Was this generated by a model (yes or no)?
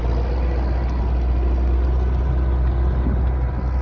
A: no